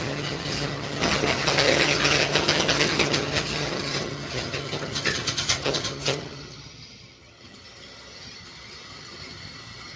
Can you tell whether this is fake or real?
fake